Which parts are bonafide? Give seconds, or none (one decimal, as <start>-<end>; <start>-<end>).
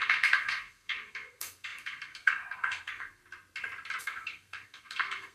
3.2-4.0